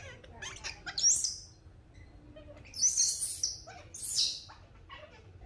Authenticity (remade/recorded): recorded